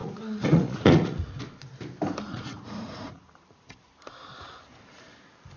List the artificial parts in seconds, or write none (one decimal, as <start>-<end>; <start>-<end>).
0.0-1.4; 2.3-3.2